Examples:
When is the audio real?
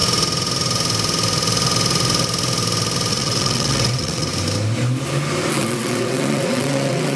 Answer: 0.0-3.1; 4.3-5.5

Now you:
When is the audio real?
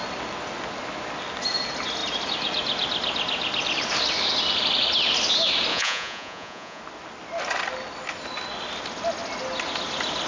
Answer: 0.0-5.7; 6.8-10.3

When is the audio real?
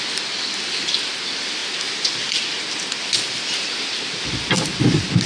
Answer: 0.0-5.3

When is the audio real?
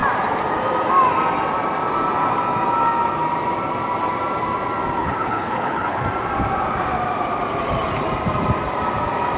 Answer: 0.0-5.0; 6.0-9.4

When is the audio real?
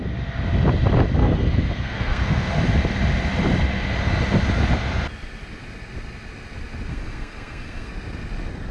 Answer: 0.0-1.2; 2.5-6.9; 7.9-8.7